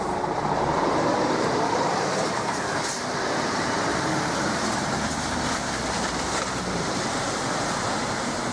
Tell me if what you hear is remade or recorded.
remade